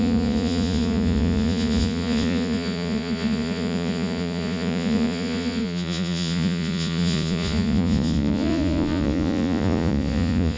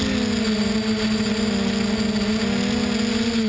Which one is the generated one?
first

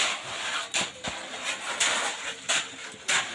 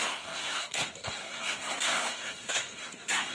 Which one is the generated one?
second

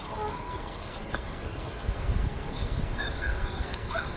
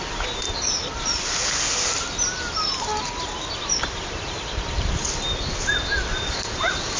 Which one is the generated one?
first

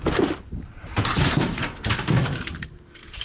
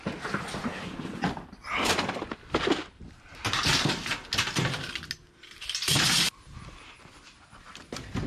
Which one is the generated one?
first